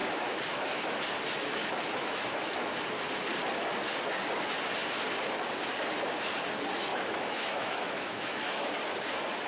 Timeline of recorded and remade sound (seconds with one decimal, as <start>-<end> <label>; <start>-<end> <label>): 0.0-1.0 remade; 1.0-1.6 recorded; 1.6-2.7 remade; 2.7-6.9 recorded; 6.9-8.6 remade; 8.6-9.5 recorded